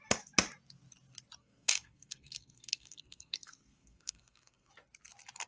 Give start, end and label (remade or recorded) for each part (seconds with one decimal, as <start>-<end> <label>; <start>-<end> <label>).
0.0-1.4 recorded; 1.4-4.7 remade; 4.7-5.5 recorded

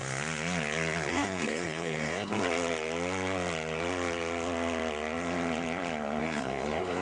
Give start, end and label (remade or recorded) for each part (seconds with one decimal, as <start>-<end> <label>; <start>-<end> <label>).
0.0-1.1 recorded; 1.1-2.3 remade; 2.3-6.2 recorded; 6.2-7.0 remade

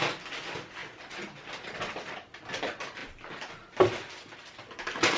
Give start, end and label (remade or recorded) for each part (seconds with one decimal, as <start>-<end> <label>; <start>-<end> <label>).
0.0-5.2 recorded

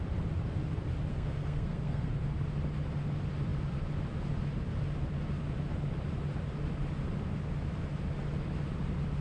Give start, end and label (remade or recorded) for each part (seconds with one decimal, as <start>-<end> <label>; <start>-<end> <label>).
0.0-1.1 recorded; 1.1-2.1 remade; 2.1-9.2 recorded